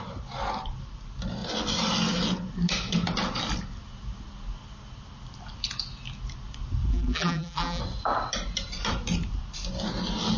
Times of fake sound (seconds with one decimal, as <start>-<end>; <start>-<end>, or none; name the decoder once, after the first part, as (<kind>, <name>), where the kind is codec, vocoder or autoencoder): 6.9-7.8 (vocoder, BigVGAN v2)